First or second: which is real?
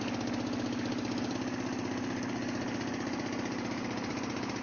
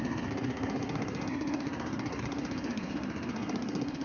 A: first